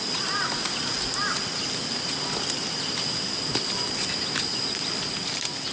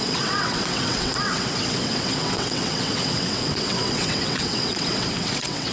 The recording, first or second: first